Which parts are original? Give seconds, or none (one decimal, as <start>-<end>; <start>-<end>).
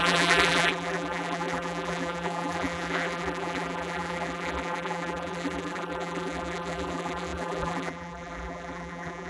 none